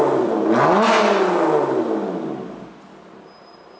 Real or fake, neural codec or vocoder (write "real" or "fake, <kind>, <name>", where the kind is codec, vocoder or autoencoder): real